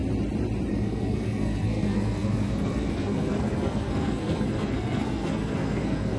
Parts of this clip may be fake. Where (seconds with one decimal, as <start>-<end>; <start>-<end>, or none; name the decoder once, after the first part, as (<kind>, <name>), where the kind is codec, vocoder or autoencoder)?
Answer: 0.7-6.2 (codec, SNAC)